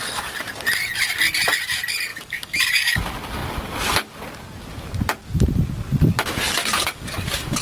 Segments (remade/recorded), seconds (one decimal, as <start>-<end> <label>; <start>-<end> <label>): 0.0-2.1 recorded; 2.1-3.0 remade; 3.0-6.6 recorded; 6.6-7.6 remade